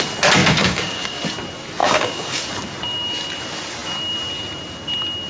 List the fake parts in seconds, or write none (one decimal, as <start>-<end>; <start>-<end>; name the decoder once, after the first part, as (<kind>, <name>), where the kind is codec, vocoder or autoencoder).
0.4-1.2 (codec, DAC); 1.8-2.4